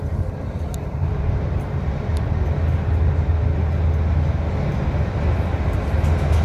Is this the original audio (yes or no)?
yes